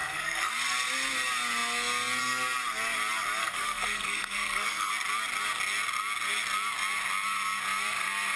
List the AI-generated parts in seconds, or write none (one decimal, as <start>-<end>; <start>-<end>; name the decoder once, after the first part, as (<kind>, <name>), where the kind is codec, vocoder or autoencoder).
0.0-0.5 (codec, SNAC); 3.4-4.9

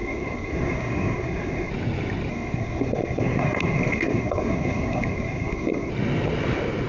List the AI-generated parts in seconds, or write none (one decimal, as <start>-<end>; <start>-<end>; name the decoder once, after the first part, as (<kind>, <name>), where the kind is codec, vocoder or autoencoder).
0.0-1.7 (codec, SNAC); 2.3-5.9

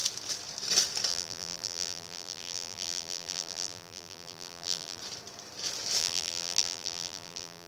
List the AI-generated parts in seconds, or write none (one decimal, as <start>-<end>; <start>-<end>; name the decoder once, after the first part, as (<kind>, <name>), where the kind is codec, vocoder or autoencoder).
1.1-5.0 (vocoder, BigVGAN v2); 6.0-7.7

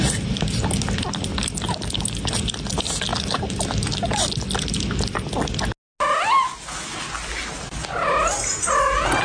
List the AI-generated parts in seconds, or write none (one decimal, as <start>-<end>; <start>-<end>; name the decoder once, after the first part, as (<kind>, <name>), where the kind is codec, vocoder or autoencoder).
3.1-4.2 (vocoder, BigVGAN v2)

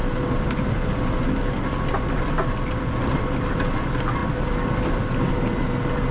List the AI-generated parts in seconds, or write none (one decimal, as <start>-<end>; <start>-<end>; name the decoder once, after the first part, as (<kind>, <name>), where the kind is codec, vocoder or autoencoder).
none

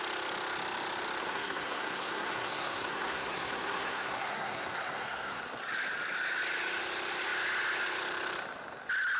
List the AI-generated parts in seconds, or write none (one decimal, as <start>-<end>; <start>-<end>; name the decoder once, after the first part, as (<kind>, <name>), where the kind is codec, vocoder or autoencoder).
1.2-5.4 (codec, SNAC)